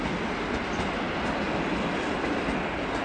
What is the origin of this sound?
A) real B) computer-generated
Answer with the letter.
A